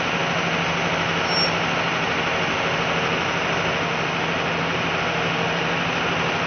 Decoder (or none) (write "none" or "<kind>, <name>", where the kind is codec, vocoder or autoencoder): none